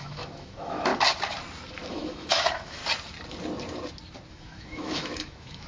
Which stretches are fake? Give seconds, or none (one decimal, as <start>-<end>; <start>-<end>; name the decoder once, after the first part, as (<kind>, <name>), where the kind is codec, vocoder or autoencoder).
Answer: 0.0-0.9 (autoencoder, DAC-VAE); 1.9-2.8; 4.3-5.7